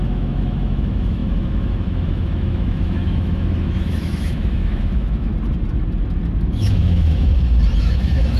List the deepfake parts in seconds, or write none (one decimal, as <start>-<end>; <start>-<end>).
0.0-5.3; 6.4-7.3; 7.8-8.4